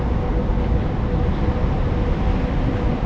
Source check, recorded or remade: recorded